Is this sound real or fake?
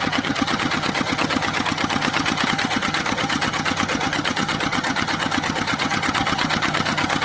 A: fake